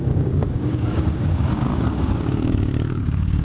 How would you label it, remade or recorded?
remade